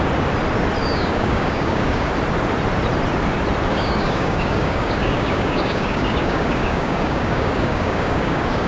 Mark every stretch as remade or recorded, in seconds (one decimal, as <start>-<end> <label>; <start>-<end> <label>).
0.0-0.8 recorded; 0.8-2.1 remade; 2.1-3.7 recorded; 3.7-8.7 remade